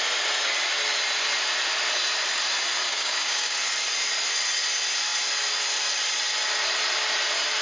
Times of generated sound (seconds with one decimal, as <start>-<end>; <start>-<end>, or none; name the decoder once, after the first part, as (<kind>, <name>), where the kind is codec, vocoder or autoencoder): 2.9-3.6 (codec, DAC)